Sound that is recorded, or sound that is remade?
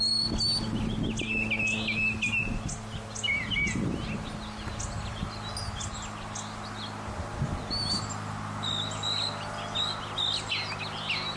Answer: recorded